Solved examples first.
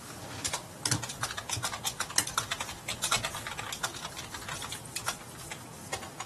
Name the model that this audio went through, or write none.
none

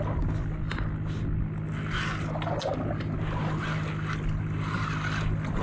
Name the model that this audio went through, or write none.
none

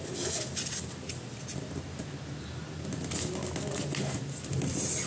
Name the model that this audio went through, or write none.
none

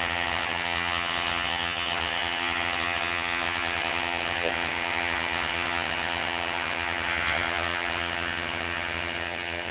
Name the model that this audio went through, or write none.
vocoder, HiFi-GAN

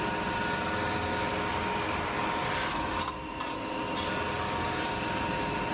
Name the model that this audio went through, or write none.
none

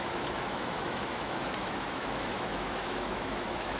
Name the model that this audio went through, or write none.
autoencoder, DAC-VAE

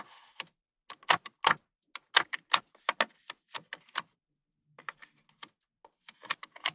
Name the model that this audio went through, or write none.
none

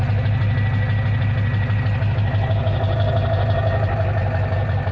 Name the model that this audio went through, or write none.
none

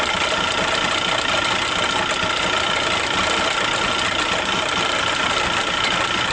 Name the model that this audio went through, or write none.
none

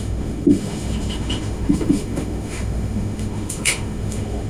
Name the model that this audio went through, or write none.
autoencoder, DAC-VAE